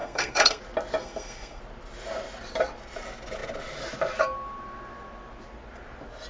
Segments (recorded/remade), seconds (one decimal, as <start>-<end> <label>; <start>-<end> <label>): 0.0-0.6 remade; 0.6-1.0 recorded; 1.0-1.6 remade; 1.6-6.3 recorded